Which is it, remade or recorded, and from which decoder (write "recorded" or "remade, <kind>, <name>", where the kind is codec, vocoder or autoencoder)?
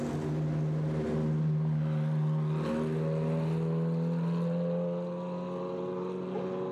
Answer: recorded